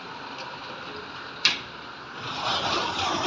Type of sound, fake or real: real